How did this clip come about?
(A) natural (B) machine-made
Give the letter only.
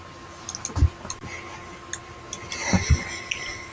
A